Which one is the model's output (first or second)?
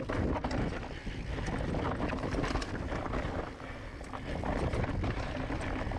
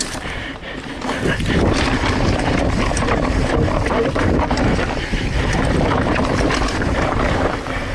second